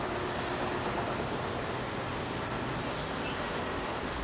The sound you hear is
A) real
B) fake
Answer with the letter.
A